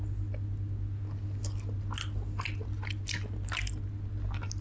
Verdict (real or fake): real